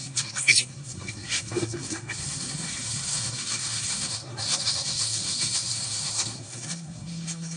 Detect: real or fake fake